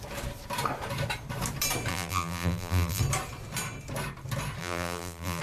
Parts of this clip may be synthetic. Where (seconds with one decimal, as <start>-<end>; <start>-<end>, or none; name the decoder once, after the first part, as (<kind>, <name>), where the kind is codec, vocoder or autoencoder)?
1.9-3.0 (vocoder, BigVGAN v2); 4.6-5.4

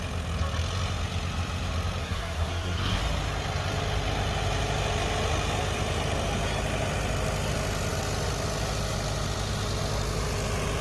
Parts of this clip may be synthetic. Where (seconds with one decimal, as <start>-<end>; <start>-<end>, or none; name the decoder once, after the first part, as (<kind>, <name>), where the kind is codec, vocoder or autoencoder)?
2.0-3.0 (codec, SNAC)

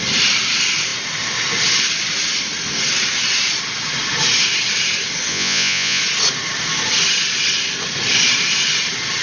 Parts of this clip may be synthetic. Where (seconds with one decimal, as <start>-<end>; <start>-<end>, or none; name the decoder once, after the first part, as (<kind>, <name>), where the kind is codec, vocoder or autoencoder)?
5.3-6.0 (vocoder, Vocos)

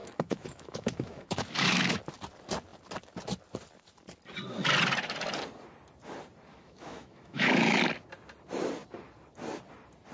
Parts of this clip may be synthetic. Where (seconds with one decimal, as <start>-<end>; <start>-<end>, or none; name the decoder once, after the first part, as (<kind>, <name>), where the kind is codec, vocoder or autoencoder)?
0.0-2.0 (autoencoder, DAC-VAE); 6.5-7.8